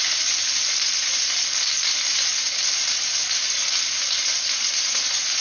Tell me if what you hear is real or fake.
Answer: real